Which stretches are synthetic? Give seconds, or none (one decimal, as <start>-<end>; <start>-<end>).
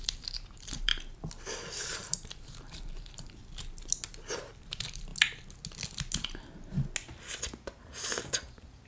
0.0-0.9; 1.7-3.4; 4.3-5.1; 7.8-8.9